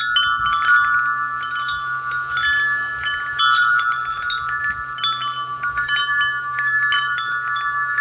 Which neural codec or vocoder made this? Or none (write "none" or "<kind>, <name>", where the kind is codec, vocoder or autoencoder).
none